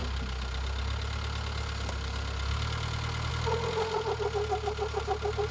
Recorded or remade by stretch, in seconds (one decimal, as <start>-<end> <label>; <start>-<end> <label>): 0.0-5.5 recorded